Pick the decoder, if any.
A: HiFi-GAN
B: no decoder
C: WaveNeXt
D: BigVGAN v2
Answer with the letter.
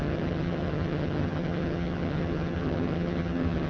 A